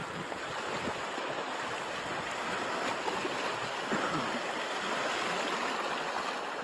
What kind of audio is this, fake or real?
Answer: real